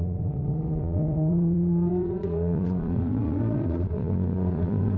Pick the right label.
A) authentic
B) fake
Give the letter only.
B